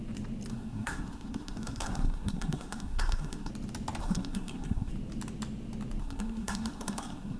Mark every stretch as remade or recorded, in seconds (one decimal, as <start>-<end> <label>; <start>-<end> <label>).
0.0-0.5 recorded; 0.5-3.5 remade; 3.5-4.0 recorded; 4.0-4.9 remade; 4.9-6.0 recorded; 6.0-7.4 remade